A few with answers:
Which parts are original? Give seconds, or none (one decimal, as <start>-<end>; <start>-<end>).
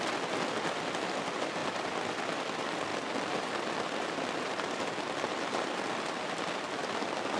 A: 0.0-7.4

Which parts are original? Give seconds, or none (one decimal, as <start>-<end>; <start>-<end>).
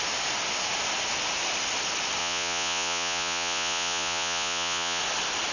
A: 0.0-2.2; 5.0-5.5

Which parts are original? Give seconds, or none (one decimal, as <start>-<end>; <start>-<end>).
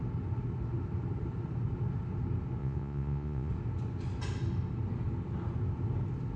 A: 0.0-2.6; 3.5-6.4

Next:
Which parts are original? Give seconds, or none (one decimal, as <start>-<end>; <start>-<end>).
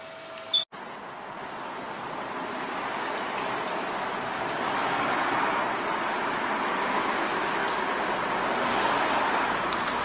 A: 0.0-10.0